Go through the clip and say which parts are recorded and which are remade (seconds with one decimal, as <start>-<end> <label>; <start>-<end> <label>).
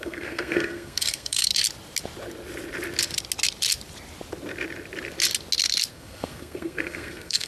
0.0-1.5 remade; 1.5-5.9 recorded; 5.9-7.5 remade